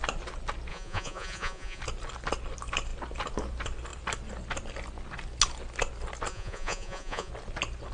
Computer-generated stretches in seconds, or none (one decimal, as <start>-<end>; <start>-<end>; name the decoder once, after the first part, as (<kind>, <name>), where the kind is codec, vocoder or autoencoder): 0.7-1.8 (vocoder, Vocos); 6.3-7.3